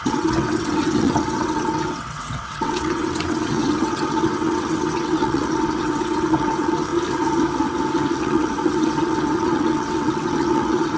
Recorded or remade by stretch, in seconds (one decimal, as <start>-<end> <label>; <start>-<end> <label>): 0.0-6.9 remade; 6.9-8.2 recorded; 8.2-11.0 remade